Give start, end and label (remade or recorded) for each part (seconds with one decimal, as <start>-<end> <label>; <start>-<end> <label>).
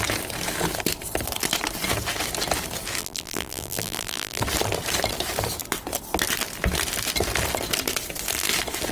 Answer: 0.0-3.0 recorded; 3.0-4.4 remade; 4.4-8.9 recorded